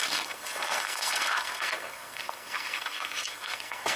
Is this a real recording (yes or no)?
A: no